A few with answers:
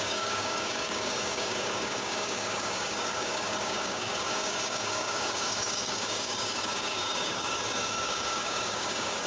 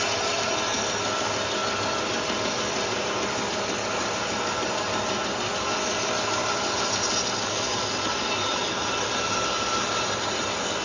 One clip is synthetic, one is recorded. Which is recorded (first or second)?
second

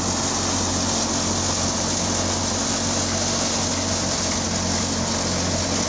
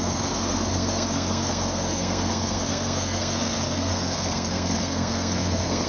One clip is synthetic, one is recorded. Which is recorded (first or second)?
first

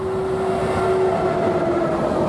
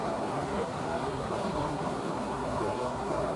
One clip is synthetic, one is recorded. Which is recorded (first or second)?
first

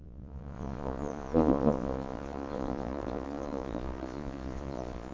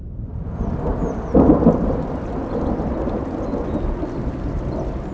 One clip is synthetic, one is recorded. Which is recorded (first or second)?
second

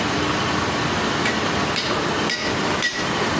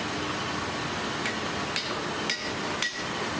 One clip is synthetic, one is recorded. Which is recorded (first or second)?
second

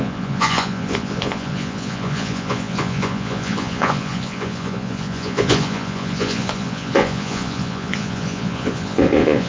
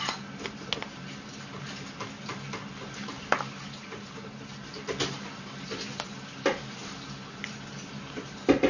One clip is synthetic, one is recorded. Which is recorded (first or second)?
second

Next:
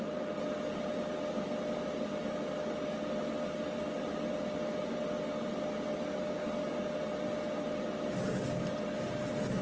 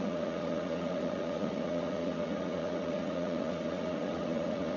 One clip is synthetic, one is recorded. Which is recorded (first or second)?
first